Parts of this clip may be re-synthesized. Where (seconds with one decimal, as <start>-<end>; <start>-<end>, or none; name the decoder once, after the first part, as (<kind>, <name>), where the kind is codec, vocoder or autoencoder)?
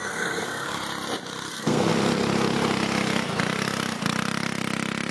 0.0-0.8 (codec, SNAC); 1.5-1.9